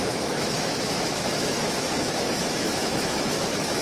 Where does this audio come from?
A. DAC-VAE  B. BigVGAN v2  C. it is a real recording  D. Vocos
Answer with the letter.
A